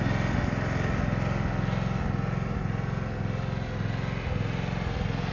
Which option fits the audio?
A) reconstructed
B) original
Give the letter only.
B